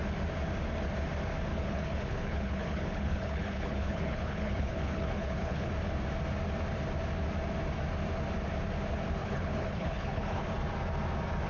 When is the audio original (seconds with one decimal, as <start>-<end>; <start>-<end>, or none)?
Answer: 0.0-1.5; 5.7-9.2; 10.4-11.5